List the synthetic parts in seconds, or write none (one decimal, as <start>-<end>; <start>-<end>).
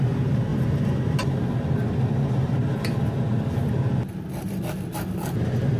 none